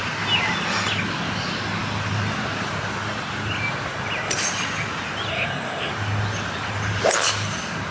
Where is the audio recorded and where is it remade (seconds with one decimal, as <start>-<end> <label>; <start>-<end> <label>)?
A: 0.0-5.3 recorded; 5.3-5.9 remade; 5.9-7.9 recorded